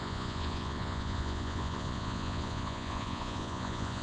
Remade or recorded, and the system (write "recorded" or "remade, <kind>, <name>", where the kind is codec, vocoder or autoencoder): remade, vocoder, Vocos